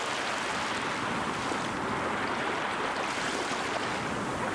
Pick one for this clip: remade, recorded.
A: recorded